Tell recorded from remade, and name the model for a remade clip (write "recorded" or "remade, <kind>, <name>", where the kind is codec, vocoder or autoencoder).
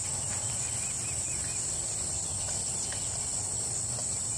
recorded